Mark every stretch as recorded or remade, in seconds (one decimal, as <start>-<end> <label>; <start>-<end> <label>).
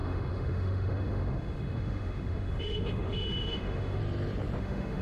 0.0-4.0 remade; 4.0-4.6 recorded; 4.6-5.0 remade